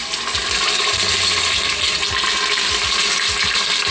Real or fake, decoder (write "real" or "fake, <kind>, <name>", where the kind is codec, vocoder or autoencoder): real